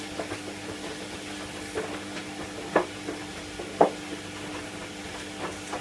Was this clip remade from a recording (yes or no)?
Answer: no